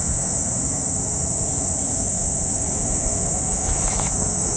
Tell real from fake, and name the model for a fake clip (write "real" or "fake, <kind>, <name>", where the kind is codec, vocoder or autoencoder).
fake, autoencoder, DAC-VAE